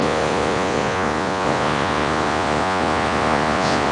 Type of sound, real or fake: fake